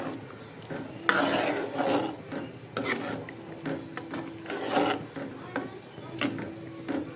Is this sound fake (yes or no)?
no